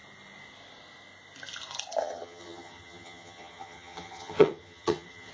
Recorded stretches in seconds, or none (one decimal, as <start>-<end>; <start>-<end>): 0.0-2.0